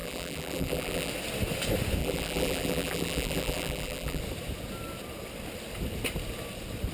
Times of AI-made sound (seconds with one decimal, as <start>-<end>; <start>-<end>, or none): 0.0-1.1; 2.0-4.2